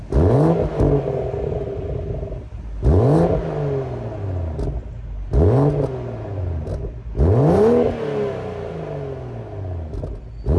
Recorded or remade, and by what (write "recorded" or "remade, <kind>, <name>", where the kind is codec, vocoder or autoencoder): recorded